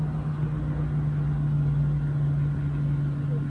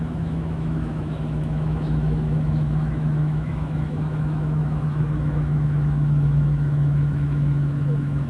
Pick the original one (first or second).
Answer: first